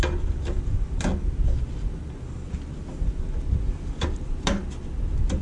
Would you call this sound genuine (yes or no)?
yes